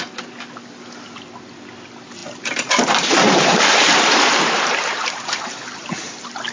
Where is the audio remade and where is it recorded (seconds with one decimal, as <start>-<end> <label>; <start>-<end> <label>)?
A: 0.0-2.2 recorded; 2.2-6.1 remade; 6.1-6.5 recorded